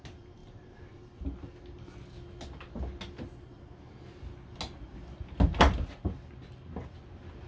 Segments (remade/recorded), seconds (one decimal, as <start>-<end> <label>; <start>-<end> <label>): 0.0-7.5 recorded